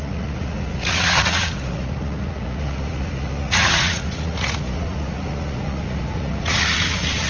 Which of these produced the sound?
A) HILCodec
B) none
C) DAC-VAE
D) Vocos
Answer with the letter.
D